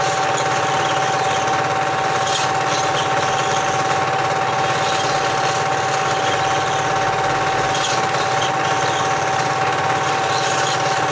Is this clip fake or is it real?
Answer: real